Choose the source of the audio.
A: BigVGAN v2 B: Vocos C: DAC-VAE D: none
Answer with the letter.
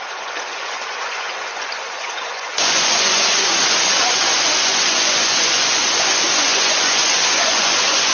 B